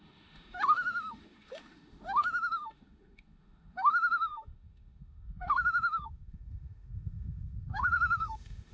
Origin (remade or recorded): remade